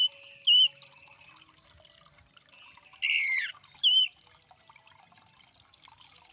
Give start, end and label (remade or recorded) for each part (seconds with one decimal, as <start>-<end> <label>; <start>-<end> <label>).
0.0-6.3 recorded